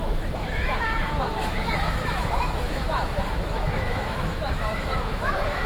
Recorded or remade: remade